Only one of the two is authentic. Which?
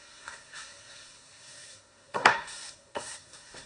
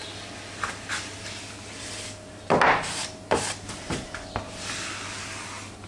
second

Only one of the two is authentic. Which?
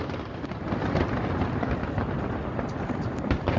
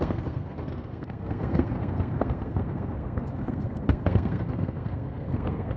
first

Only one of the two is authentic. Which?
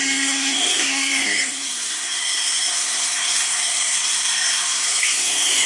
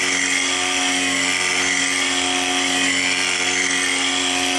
second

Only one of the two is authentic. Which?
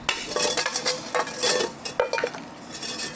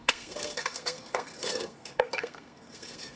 first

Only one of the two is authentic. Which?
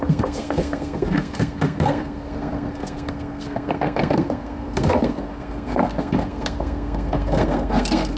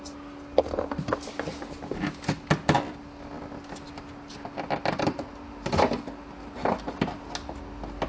second